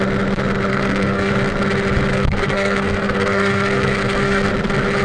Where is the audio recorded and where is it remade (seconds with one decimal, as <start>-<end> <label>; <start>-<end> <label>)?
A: 0.0-0.7 recorded; 0.7-1.3 remade; 1.3-2.1 recorded; 2.1-4.5 remade; 4.5-5.0 recorded